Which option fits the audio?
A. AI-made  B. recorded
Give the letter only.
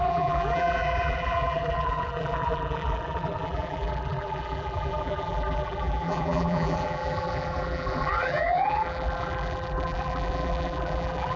A